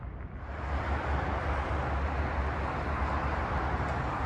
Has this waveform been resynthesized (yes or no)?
no